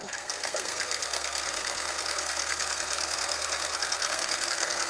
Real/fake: fake